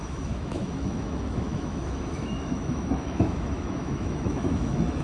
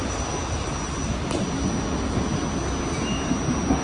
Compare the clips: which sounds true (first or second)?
second